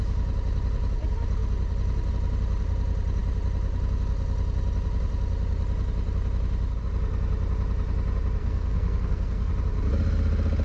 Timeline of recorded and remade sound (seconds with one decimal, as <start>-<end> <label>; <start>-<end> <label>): 0.0-8.4 recorded; 8.4-9.5 remade; 9.5-10.6 recorded